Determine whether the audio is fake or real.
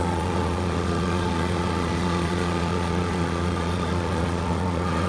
fake